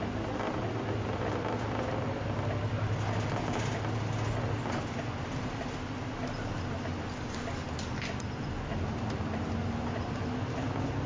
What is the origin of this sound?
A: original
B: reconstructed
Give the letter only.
A